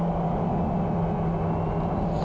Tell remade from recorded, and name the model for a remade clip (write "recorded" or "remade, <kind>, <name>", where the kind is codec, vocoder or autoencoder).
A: recorded